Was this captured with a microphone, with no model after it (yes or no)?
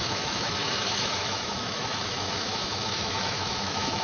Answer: no